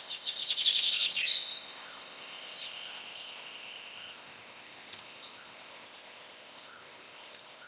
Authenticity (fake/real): fake